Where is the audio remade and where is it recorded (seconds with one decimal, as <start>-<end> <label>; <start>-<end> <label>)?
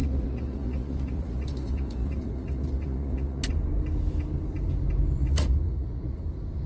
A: 0.0-3.4 remade; 3.4-5.2 recorded; 5.2-6.2 remade; 6.2-6.7 recorded